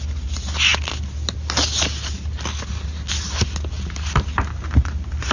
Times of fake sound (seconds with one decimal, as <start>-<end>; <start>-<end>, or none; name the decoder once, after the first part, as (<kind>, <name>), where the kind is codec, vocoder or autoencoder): none